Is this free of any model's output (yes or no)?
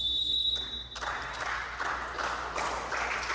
yes